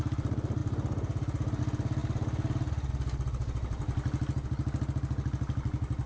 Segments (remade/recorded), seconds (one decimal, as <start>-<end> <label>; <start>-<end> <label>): 0.0-6.1 recorded